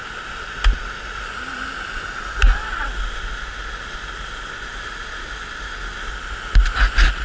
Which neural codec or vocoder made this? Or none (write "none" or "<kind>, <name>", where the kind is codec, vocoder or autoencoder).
none